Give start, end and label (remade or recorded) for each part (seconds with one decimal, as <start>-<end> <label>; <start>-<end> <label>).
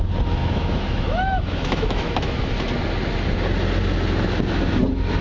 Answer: 0.0-0.4 recorded; 0.4-2.5 remade; 2.5-5.2 recorded